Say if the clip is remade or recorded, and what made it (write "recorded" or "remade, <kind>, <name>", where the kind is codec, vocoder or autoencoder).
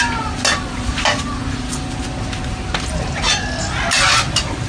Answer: recorded